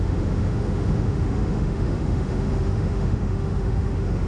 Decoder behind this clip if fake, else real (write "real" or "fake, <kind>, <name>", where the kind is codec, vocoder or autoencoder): fake, autoencoder, DAC-VAE